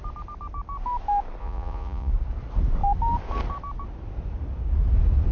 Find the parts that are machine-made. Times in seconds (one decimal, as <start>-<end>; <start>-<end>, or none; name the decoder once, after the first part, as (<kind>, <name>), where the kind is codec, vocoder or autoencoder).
1.4-2.1 (vocoder, Vocos)